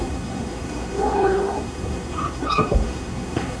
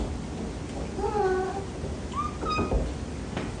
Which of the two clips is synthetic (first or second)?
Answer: first